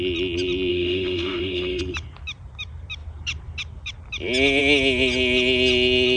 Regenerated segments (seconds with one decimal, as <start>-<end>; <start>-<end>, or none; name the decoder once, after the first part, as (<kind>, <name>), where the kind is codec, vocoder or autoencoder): 0.7-1.8 (autoencoder, DAC-VAE)